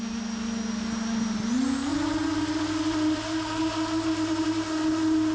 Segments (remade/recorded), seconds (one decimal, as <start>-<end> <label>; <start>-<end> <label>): 0.0-5.3 recorded